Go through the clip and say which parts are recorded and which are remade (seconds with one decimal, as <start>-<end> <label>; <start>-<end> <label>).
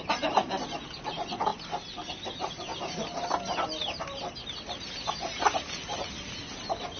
0.0-7.0 recorded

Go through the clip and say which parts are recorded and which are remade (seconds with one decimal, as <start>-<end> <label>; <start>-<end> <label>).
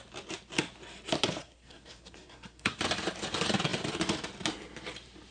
0.0-1.4 recorded; 1.4-2.8 remade; 2.8-5.3 recorded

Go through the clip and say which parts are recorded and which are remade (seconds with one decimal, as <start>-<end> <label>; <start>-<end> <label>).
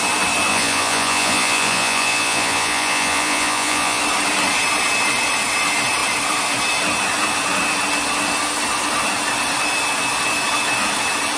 0.0-0.5 recorded; 0.5-4.0 remade; 4.0-11.4 recorded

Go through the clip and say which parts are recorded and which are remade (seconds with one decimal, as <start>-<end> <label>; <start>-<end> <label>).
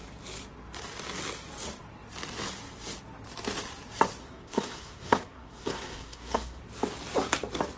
0.0-4.2 recorded; 4.2-6.6 remade; 6.6-7.8 recorded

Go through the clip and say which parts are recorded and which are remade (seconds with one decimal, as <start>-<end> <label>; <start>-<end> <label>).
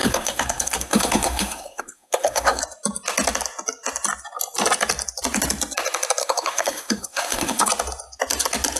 0.0-2.6 remade; 2.6-6.2 recorded; 6.2-7.7 remade; 7.7-8.8 recorded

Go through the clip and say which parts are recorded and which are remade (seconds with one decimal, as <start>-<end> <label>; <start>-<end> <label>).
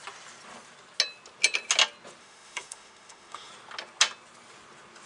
0.0-2.2 recorded; 2.2-3.5 remade; 3.5-5.1 recorded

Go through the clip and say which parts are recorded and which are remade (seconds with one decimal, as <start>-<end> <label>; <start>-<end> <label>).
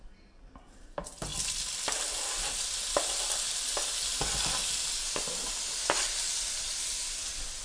0.0-7.6 recorded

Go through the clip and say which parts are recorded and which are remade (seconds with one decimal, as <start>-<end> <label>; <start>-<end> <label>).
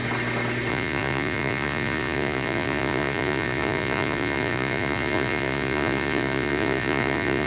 0.0-0.7 recorded; 0.7-7.5 remade